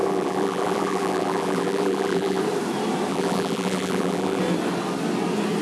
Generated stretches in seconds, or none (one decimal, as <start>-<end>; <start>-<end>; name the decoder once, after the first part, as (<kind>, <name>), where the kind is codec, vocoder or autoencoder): 0.0-2.4 (vocoder, BigVGAN v2); 3.1-4.4

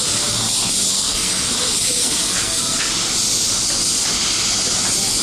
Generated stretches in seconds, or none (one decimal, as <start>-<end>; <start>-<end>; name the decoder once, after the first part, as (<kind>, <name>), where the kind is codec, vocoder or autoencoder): 0.9-1.5 (codec, SNAC); 2.0-2.9